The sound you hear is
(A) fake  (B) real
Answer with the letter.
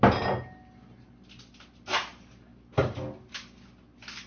B